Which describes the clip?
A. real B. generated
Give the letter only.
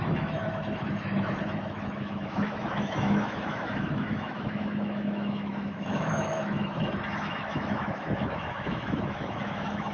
B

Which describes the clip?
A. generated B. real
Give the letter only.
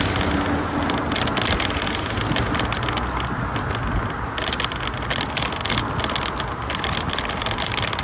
B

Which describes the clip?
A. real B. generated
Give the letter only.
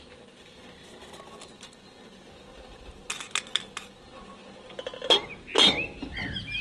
A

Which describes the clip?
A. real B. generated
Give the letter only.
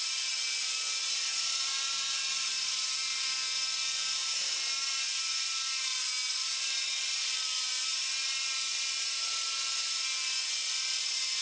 A